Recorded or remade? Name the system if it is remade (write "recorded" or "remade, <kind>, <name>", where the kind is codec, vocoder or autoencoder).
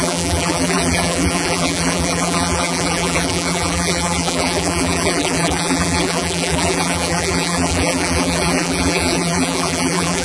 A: remade, vocoder, BigVGAN v2